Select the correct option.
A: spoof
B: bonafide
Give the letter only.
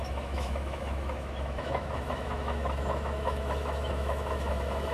A